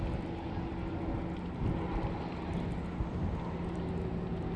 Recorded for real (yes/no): yes